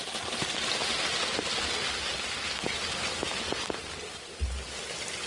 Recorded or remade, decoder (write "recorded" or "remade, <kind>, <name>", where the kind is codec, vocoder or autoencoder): recorded